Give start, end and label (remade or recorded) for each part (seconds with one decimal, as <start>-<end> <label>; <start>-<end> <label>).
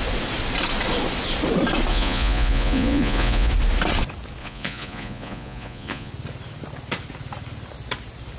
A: 0.0-1.9 recorded; 1.9-3.5 remade; 3.5-4.4 recorded; 4.4-6.1 remade; 6.1-8.4 recorded